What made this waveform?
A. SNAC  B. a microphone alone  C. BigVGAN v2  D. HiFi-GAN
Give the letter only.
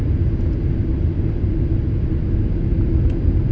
B